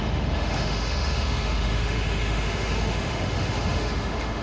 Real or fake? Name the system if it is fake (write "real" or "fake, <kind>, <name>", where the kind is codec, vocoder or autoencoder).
fake, autoencoder, DAC-VAE